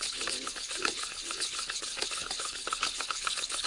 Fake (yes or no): yes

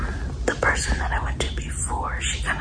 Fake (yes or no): no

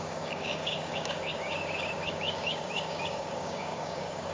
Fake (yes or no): yes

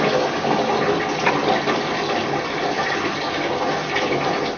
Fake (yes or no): no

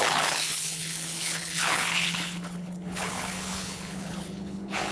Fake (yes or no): yes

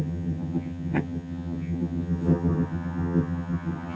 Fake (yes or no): yes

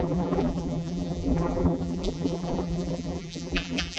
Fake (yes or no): yes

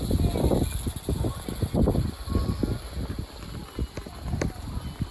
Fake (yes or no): no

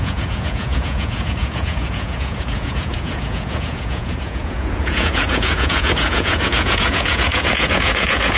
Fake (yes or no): yes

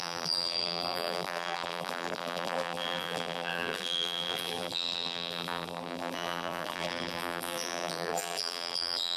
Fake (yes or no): yes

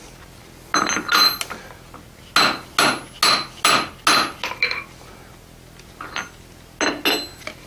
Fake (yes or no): no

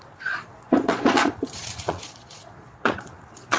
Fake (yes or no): yes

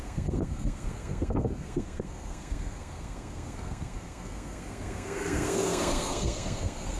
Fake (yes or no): yes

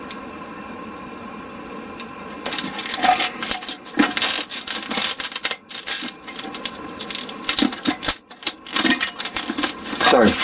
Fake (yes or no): no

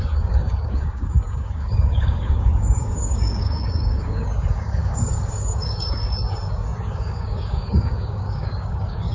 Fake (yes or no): yes